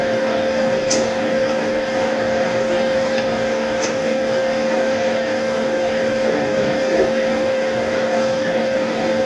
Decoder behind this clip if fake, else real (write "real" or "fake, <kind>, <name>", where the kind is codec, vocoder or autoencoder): fake, codec, DAC